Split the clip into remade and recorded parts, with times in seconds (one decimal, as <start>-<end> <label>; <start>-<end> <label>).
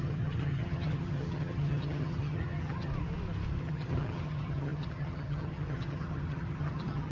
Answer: 0.0-2.9 remade; 2.9-3.6 recorded; 3.6-7.1 remade